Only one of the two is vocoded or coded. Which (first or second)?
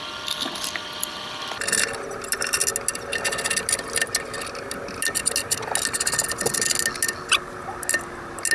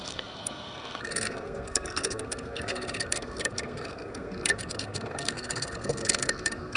second